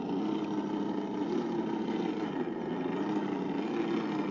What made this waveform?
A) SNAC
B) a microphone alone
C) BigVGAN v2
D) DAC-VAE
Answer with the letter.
B